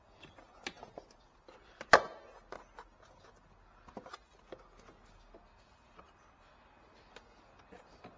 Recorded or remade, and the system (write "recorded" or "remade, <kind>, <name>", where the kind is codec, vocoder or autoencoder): recorded